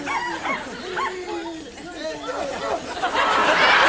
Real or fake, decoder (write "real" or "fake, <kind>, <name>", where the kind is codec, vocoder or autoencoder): real